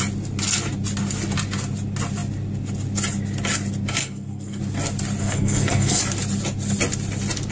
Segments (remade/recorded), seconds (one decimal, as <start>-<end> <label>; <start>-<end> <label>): 0.0-4.0 recorded; 4.0-4.6 remade; 4.6-5.2 recorded; 5.2-6.0 remade; 6.0-7.5 recorded